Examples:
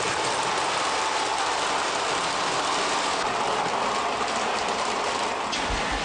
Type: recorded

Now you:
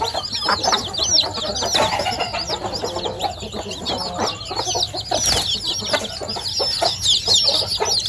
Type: recorded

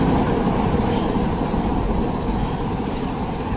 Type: remade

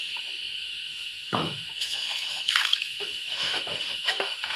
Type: remade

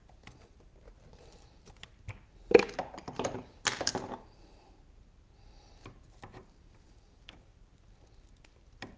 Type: recorded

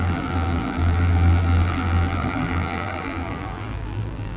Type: remade